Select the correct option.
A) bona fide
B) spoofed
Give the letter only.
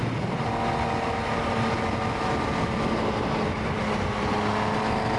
A